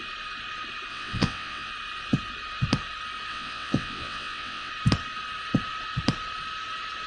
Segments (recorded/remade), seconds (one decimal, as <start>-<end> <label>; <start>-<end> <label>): 0.0-0.9 recorded; 0.9-1.7 remade; 1.7-3.3 recorded; 3.3-4.7 remade; 4.7-7.1 recorded